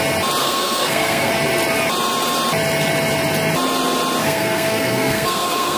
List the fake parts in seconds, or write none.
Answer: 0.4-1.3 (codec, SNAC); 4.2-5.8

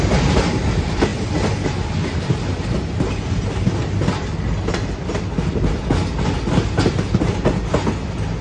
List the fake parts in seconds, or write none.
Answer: none

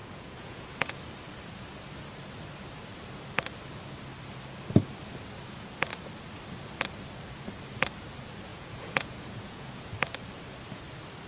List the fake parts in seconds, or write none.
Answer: 0.0-1.0 (vocoder, Vocos); 8.5-9.8

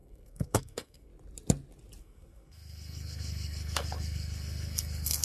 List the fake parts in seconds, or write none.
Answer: 0.0-1.1 (codec, SNAC); 2.0-5.2

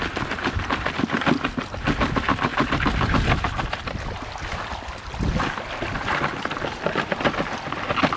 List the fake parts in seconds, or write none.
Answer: none

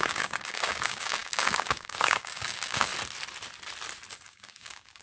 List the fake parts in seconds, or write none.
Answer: 0.0-2.9 (codec, DAC); 4.1-5.0